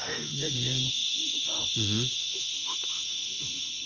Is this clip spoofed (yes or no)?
yes